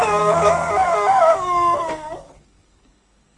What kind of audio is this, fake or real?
fake